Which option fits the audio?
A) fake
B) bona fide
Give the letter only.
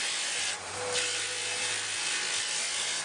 B